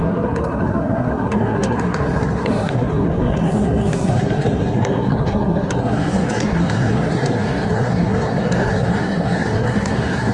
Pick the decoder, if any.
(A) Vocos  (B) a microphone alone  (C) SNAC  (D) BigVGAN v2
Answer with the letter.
C